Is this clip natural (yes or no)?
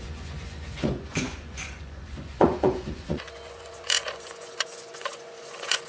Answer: no